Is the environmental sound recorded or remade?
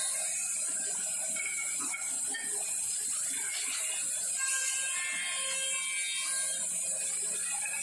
recorded